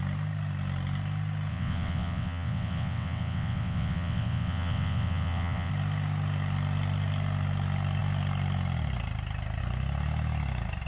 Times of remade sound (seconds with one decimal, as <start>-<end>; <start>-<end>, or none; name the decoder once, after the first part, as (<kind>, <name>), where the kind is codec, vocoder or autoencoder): 1.5-5.7 (vocoder, WaveNeXt)